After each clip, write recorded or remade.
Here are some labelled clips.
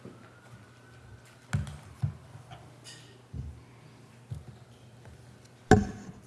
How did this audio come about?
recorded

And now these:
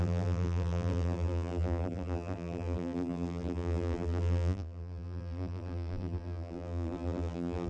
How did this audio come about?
remade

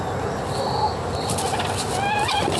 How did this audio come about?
recorded